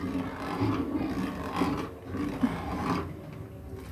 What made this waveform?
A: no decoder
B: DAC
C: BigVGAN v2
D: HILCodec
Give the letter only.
A